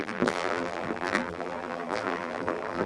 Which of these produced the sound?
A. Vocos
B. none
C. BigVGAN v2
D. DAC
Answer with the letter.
C